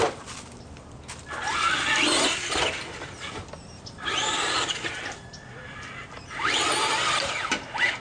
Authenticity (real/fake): real